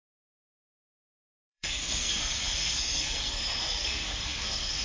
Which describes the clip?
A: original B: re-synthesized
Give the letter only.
B